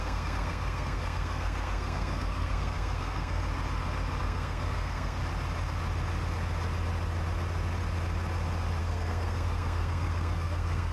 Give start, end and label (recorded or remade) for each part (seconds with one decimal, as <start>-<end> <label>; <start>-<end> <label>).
0.0-3.4 remade; 3.4-4.2 recorded; 4.2-5.2 remade; 5.2-8.8 recorded; 8.8-10.9 remade